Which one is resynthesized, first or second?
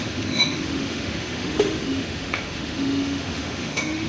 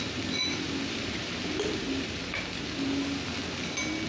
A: first